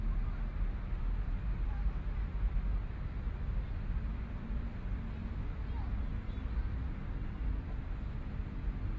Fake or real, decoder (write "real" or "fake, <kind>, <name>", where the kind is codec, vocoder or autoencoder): real